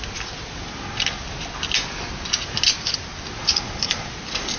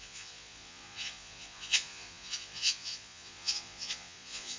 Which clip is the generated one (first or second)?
second